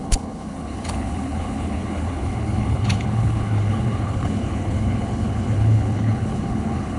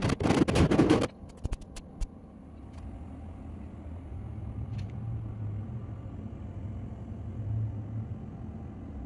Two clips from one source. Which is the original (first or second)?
second